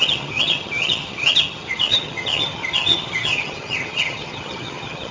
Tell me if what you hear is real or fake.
fake